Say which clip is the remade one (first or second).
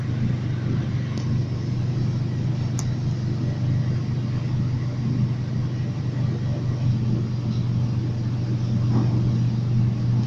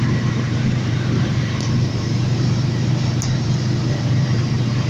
second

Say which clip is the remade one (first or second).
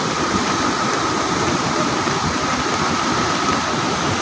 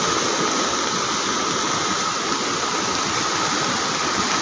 first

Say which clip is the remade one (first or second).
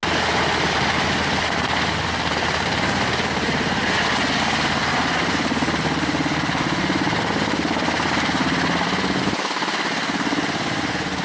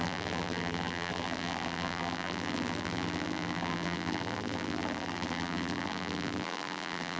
second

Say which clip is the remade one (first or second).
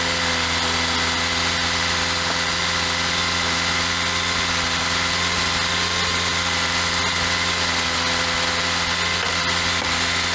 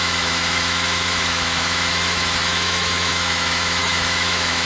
second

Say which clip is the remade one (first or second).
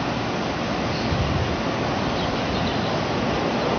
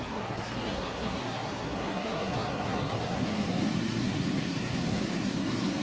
second